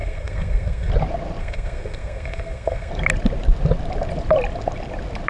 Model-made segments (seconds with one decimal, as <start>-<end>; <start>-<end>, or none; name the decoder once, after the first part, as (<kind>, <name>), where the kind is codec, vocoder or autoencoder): 0.0-0.9 (codec, SNAC); 1.4-2.9